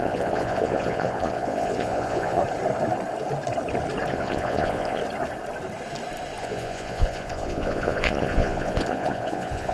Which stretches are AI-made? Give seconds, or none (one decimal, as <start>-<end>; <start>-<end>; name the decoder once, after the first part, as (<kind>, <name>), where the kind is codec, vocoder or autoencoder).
0.0-2.4 (vocoder, Vocos); 4.1-5.0; 6.4-9.7